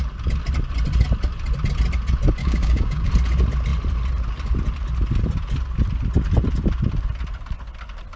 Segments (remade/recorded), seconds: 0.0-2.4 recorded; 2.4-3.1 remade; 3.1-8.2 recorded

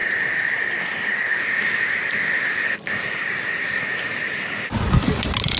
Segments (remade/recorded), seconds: 0.0-5.6 recorded

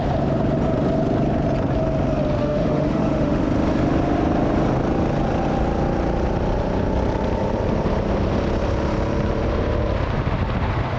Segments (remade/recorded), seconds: 0.0-2.4 recorded; 2.4-3.4 remade; 3.4-11.0 recorded

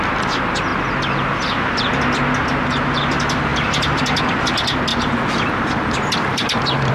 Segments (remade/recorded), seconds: 0.0-3.5 recorded; 3.5-4.0 remade; 4.0-4.9 recorded; 4.9-6.9 remade

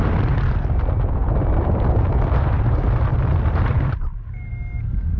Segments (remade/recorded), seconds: 0.0-1.2 recorded; 1.2-2.5 remade; 2.5-3.1 recorded; 3.1-4.5 remade; 4.5-5.2 recorded

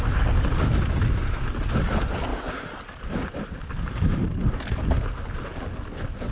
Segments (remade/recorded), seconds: 0.0-6.3 recorded

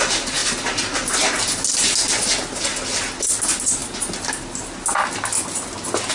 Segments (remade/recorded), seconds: 0.0-6.1 recorded

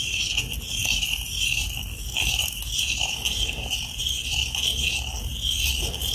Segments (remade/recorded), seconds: 0.0-6.1 recorded